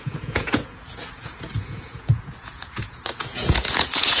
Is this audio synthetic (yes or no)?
yes